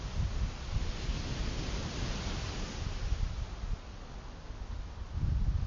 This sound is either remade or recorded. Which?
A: recorded